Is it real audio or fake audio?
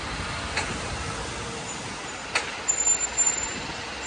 real